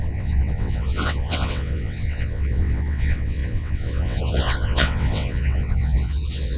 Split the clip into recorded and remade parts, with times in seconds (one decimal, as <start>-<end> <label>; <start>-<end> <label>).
0.0-6.6 remade